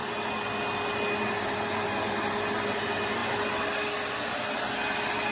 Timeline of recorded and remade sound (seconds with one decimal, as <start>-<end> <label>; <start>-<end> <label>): 0.0-5.3 recorded